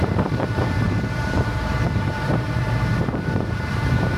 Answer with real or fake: fake